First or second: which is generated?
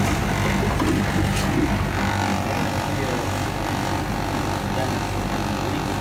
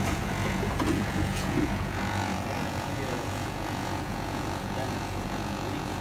second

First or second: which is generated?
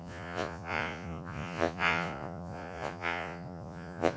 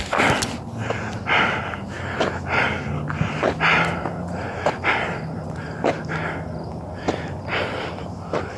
first